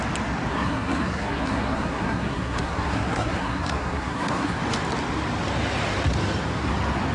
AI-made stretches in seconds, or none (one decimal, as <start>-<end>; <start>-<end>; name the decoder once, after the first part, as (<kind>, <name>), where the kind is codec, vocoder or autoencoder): 0.5-4.6 (codec, SNAC)